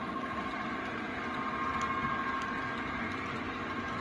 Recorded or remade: recorded